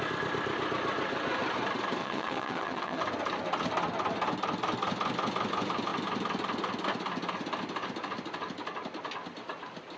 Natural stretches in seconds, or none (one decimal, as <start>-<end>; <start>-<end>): 0.0-2.0; 3.0-10.0